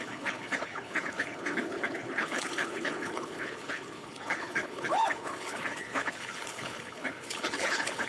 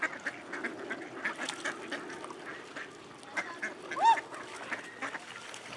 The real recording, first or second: second